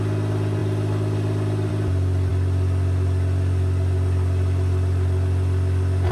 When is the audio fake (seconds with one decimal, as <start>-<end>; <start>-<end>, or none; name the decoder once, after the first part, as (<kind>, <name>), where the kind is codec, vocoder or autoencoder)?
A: none